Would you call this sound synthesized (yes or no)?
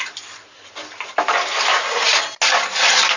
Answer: no